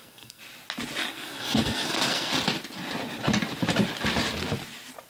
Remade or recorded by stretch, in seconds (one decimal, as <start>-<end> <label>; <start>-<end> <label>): 0.0-0.4 remade; 0.4-1.1 recorded; 1.1-2.3 remade; 2.3-5.1 recorded